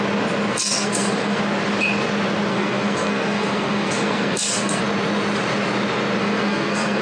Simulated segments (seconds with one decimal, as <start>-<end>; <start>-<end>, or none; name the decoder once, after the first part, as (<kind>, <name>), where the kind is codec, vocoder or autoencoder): 0.5-1.4 (codec, SNAC); 2.5-4.8; 6.2-7.0